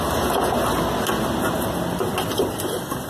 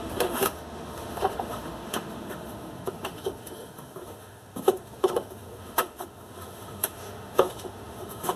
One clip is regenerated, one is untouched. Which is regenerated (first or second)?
second